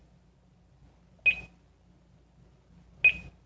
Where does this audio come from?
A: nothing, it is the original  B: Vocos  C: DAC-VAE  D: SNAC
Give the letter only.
A